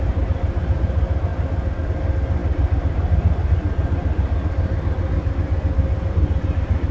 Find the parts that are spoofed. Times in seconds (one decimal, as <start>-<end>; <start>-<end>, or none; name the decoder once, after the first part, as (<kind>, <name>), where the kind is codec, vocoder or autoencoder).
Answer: none